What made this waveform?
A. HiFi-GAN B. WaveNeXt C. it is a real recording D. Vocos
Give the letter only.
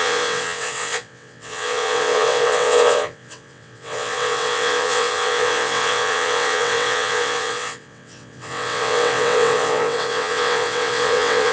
B